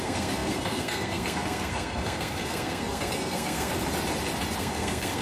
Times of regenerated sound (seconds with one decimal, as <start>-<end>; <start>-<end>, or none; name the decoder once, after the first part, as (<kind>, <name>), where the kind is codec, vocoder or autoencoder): 0.0-3.7 (codec, SNAC); 4.6-5.2